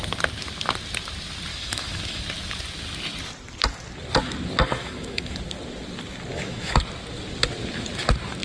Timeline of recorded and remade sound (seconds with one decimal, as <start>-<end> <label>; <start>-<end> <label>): 0.0-1.5 recorded; 1.5-2.2 remade; 2.2-4.8 recorded; 4.8-5.4 remade; 5.4-6.3 recorded; 6.3-6.8 remade; 6.8-8.4 recorded